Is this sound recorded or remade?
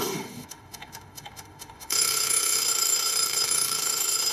remade